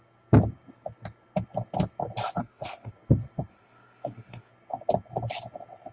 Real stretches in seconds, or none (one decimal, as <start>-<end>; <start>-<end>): 0.0-2.4; 2.9-3.5; 4.5-5.9